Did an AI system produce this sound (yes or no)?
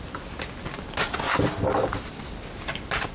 no